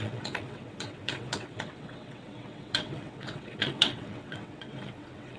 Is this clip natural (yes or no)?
no